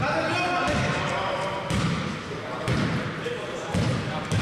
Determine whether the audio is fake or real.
real